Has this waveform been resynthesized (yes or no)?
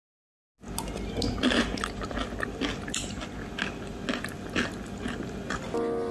no